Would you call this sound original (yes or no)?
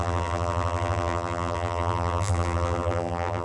no